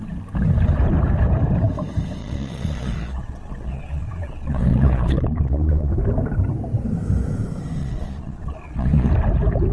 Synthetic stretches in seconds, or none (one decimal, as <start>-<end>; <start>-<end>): 2.2-5.9; 7.8-9.1